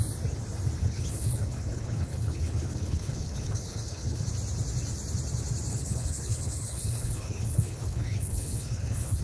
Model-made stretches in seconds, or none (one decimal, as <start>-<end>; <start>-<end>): 0.8-4.2; 5.7-9.2